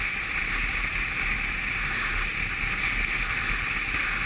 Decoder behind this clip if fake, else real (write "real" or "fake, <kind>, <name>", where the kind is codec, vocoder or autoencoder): real